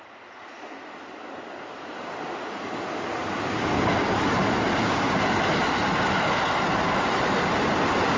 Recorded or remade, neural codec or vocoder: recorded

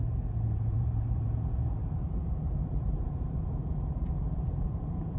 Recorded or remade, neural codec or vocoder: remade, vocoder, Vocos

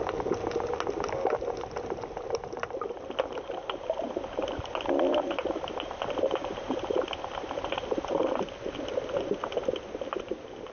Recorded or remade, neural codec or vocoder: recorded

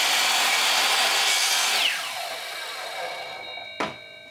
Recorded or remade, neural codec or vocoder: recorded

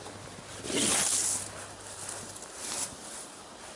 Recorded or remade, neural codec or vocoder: recorded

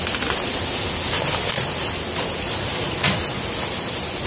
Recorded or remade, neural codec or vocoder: recorded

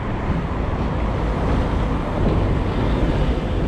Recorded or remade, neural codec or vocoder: recorded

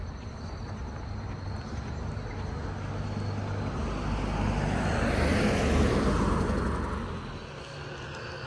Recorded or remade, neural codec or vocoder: recorded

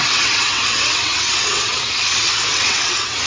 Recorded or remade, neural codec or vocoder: remade, vocoder, WaveNeXt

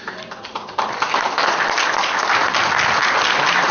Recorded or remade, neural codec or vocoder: recorded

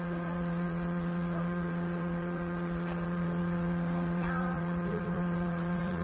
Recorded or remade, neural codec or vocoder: remade, vocoder, Vocos